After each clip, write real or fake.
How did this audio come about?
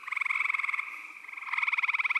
real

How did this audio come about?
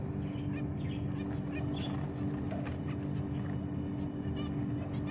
real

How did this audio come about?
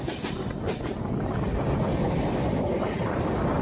real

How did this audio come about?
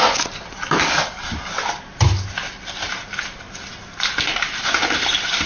real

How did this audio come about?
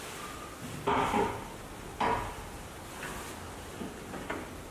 real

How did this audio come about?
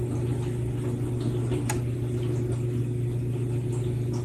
real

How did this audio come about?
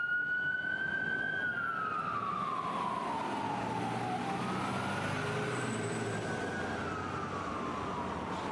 real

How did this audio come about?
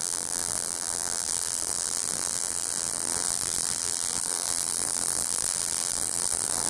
fake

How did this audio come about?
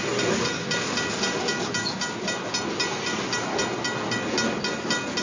real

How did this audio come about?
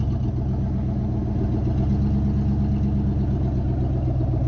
real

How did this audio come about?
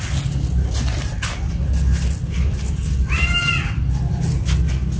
real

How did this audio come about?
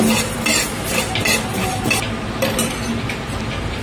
real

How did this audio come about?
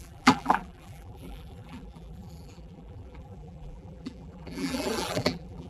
fake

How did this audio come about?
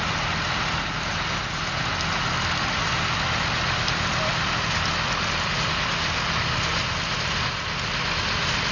real